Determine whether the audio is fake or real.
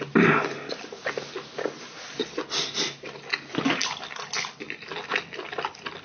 real